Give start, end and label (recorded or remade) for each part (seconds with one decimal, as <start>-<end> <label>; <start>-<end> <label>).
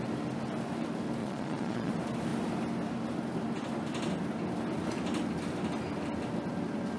0.0-1.2 recorded; 1.2-1.9 remade; 1.9-7.0 recorded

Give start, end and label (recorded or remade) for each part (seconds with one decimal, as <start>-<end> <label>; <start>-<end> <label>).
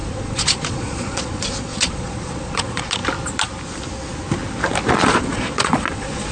0.0-3.0 remade; 3.0-4.9 recorded; 4.9-6.3 remade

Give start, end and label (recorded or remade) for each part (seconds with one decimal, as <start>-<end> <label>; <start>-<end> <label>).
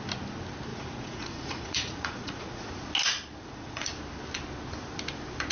0.0-0.7 recorded; 0.7-2.7 remade; 2.7-3.4 recorded; 3.4-3.9 remade; 3.9-5.5 recorded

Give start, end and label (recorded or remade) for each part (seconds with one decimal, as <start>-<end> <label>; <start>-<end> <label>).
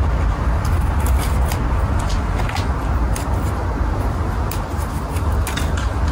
0.0-6.1 recorded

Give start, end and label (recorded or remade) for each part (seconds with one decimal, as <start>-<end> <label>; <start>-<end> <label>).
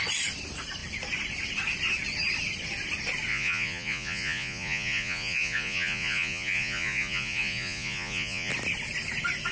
0.0-3.3 recorded; 3.3-8.5 remade; 8.5-9.5 recorded